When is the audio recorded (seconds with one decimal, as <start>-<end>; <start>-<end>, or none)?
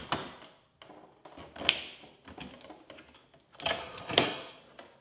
0.0-3.8; 4.6-5.0